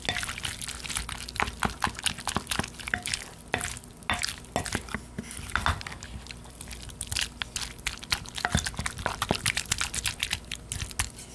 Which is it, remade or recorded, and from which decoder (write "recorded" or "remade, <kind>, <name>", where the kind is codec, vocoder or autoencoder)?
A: recorded